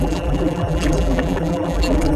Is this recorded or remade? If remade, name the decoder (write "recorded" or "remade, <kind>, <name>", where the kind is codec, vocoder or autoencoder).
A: remade, vocoder, BigVGAN v2